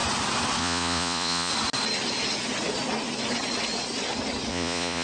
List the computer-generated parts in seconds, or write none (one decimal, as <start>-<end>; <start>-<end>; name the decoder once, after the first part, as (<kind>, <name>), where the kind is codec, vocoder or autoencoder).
0.6-1.5 (vocoder, Vocos); 4.5-5.0